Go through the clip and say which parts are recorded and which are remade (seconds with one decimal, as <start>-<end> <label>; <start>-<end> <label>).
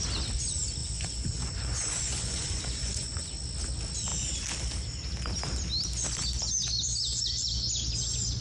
0.0-0.8 recorded; 0.8-3.3 remade; 3.3-8.4 recorded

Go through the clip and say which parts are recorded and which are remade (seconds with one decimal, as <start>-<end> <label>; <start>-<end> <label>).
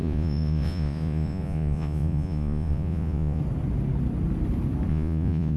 0.0-3.4 remade; 3.4-4.9 recorded; 4.9-5.6 remade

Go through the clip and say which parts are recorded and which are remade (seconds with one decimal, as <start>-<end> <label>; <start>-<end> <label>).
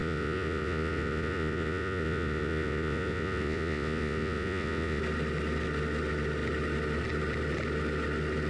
0.0-5.0 remade; 5.0-8.5 recorded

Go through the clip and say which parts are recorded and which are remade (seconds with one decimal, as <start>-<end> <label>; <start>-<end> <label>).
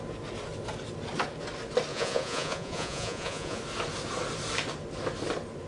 0.0-1.9 recorded; 1.9-3.6 remade; 3.6-5.7 recorded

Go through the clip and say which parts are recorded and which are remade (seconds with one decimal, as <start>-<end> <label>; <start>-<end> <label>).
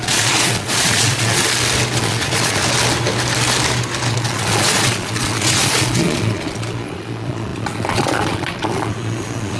0.0-1.4 remade; 1.4-2.0 recorded; 2.0-2.6 remade; 2.6-4.1 recorded; 4.1-9.6 remade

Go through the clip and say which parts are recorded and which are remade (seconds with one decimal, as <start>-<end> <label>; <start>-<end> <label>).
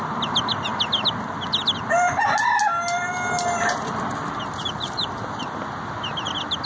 0.0-6.7 recorded